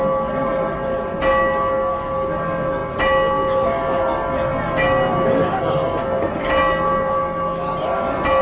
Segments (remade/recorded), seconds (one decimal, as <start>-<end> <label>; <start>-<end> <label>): 0.0-0.4 recorded; 0.4-1.2 remade; 1.2-8.4 recorded